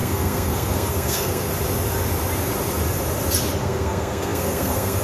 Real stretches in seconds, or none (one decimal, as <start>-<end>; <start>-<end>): 1.5-3.6